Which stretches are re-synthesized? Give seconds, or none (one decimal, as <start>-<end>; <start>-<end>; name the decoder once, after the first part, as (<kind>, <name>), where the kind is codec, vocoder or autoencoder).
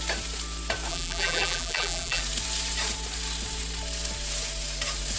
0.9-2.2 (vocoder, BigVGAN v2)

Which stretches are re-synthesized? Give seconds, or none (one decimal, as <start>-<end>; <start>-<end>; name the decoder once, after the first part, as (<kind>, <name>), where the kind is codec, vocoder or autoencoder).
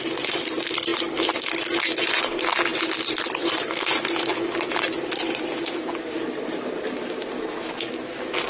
none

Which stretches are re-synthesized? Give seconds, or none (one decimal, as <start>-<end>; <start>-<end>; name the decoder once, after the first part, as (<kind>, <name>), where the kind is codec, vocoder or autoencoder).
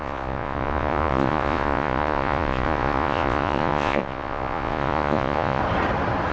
0.0-5.6 (vocoder, Vocos)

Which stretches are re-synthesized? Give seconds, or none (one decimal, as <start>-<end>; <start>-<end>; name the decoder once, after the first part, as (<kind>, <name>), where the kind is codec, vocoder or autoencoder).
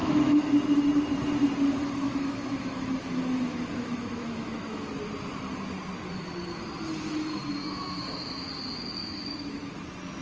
0.0-0.5 (autoencoder, DAC-VAE); 1.8-4.9; 7.6-8.5; 9.0-9.7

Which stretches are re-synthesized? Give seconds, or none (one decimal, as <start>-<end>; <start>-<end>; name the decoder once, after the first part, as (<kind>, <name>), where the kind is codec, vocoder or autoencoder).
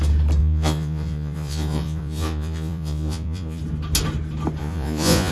0.4-3.6 (vocoder, Vocos); 4.6-5.3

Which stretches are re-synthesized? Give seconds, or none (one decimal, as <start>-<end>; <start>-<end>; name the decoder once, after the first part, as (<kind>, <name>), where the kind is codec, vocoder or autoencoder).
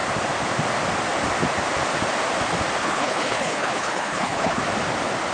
2.8-4.6 (codec, HILCodec)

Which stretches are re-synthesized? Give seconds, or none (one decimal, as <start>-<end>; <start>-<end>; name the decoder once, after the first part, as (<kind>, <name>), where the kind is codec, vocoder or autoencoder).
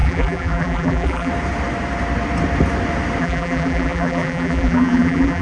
0.0-1.3 (vocoder, BigVGAN v2); 3.2-5.4